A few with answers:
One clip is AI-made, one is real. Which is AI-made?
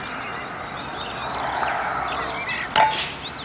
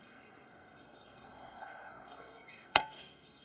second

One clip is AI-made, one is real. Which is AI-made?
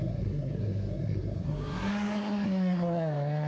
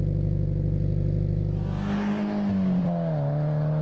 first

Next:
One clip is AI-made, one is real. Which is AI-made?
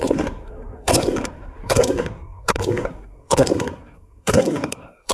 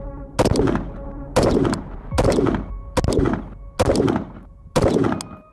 first